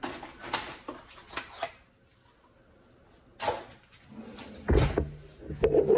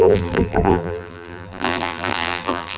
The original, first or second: first